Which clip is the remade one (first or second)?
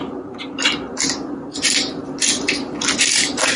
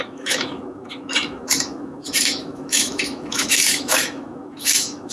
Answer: second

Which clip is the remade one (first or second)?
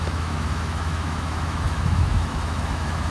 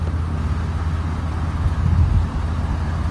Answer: first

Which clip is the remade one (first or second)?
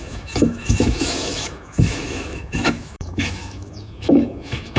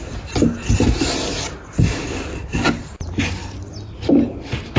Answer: first